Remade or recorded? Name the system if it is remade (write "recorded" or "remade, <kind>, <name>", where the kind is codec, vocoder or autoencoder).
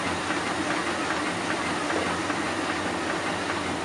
recorded